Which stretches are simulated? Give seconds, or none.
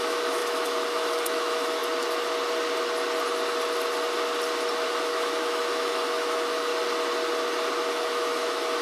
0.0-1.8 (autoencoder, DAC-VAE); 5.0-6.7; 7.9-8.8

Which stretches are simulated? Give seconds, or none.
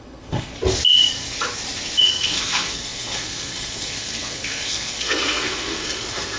0.0-0.5 (codec, SNAC); 2.0-6.4